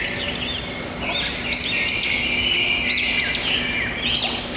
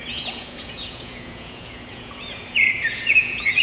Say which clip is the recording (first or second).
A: first